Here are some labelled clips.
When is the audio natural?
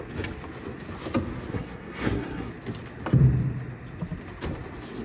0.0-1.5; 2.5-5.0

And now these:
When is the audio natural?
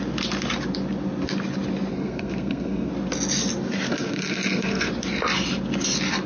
0.0-1.9; 2.9-3.9; 4.9-6.3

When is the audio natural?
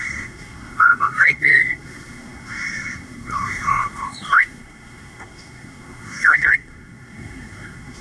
none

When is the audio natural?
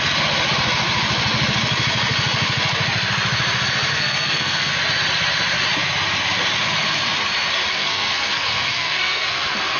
0.0-3.9; 4.7-7.7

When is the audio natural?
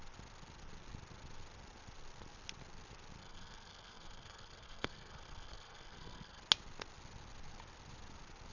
0.0-3.2; 6.4-8.5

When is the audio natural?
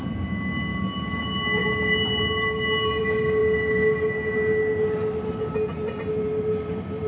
0.0-7.1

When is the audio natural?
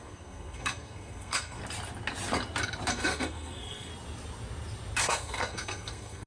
1.6-2.9; 3.9-5.0